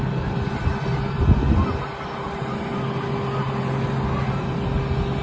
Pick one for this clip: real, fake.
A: real